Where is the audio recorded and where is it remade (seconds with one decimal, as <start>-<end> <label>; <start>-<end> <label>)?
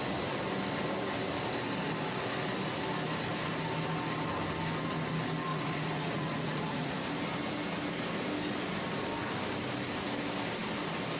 0.0-5.5 recorded; 5.5-7.0 remade; 7.0-11.2 recorded